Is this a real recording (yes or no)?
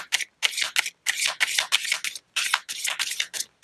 yes